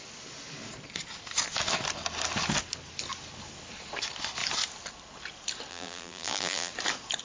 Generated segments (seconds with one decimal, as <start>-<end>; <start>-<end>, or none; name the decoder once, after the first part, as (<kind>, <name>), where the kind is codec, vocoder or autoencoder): 5.7-6.7 (vocoder, BigVGAN v2)